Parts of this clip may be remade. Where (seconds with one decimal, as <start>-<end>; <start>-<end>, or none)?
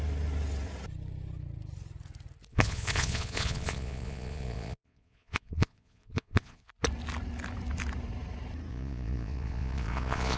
2.5-6.7; 8.7-10.4